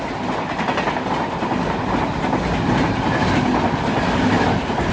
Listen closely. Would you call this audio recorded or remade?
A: recorded